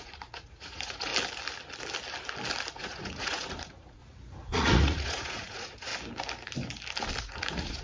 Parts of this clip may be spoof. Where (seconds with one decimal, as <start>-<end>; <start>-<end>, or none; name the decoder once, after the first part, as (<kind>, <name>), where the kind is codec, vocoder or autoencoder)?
0.0-1.1 (vocoder, Vocos); 2.7-4.0; 4.5-5.9; 7.2-7.8